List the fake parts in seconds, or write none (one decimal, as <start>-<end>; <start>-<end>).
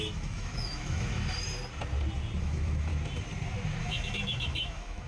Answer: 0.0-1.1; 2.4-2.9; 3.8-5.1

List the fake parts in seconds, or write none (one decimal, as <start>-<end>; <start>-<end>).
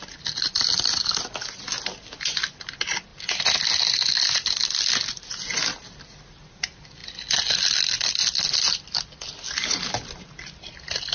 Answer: none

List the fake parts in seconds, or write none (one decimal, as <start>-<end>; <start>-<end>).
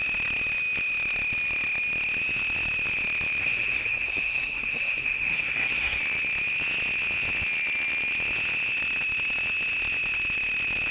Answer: 3.4-6.0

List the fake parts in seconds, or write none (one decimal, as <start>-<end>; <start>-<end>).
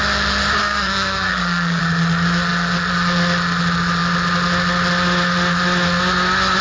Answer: 0.6-1.8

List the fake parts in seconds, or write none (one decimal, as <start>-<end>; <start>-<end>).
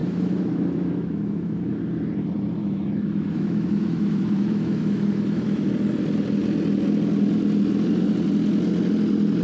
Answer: 0.0-1.8; 2.6-5.7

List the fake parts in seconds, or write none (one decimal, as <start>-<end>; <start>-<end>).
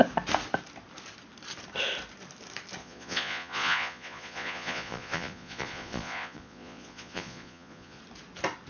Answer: 2.8-8.0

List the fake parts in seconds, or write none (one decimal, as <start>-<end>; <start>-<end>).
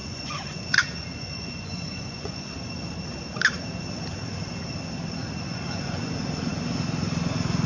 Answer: 0.0-2.5; 5.5-6.1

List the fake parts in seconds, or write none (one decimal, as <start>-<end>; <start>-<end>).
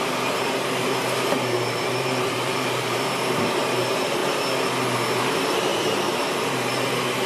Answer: 0.0-4.2; 5.2-7.3